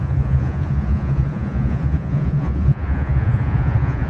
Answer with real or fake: fake